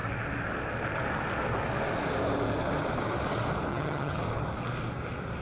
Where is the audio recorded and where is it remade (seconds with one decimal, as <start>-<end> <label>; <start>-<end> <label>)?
0.0-3.7 recorded; 3.7-4.2 remade; 4.2-5.4 recorded